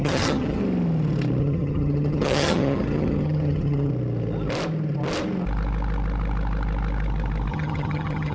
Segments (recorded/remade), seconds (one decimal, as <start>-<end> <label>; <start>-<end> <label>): 0.0-0.6 remade; 0.6-1.4 recorded; 1.4-3.9 remade; 3.9-7.5 recorded; 7.5-8.3 remade